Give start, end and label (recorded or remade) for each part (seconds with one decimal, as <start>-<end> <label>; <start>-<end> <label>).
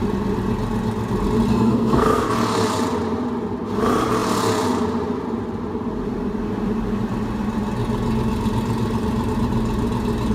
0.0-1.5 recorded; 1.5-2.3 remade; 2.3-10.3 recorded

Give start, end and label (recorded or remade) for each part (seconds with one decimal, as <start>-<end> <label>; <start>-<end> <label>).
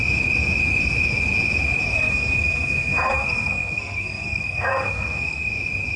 0.0-1.9 recorded; 1.9-5.5 remade; 5.5-6.0 recorded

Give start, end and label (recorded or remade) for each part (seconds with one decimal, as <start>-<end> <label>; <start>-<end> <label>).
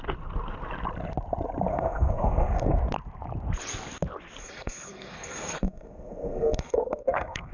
0.0-1.7 recorded; 1.7-2.8 remade; 2.8-4.4 recorded; 4.4-7.5 remade